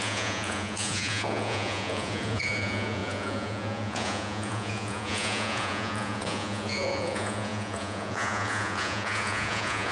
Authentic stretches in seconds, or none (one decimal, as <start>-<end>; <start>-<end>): none